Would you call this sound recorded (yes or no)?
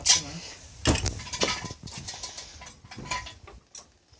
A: yes